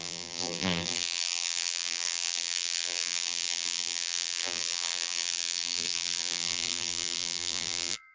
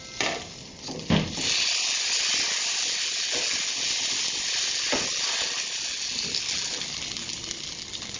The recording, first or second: second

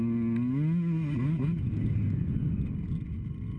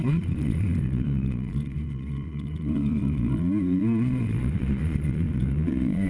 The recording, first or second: first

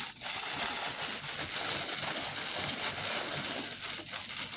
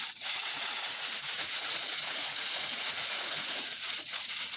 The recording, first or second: first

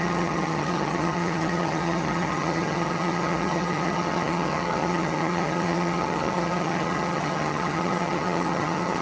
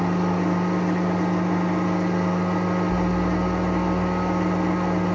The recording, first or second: second